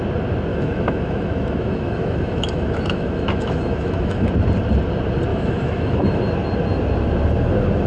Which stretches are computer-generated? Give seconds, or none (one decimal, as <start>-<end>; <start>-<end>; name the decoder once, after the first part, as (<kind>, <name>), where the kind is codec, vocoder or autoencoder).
0.5-4.3 (autoencoder, DAC-VAE); 5.3-6.2